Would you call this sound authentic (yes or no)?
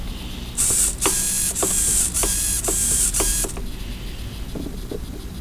yes